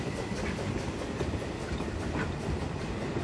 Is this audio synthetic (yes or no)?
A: no